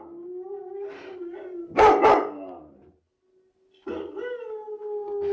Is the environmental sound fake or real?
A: real